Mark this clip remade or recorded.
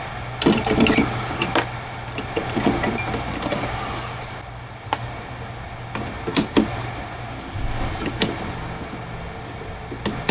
recorded